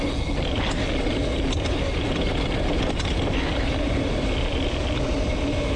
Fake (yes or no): no